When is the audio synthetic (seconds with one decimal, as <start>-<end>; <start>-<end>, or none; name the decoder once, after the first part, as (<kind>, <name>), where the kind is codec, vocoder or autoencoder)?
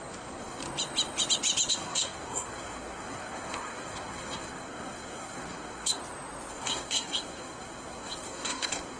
0.0-0.6 (codec, SNAC); 1.7-6.0; 6.5-9.0